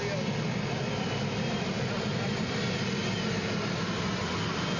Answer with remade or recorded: recorded